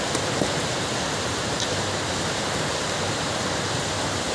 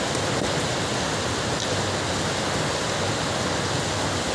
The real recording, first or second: second